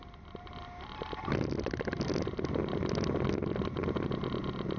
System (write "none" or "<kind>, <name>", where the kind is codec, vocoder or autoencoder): none